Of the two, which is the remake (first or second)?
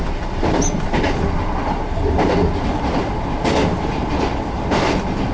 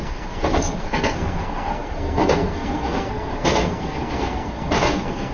second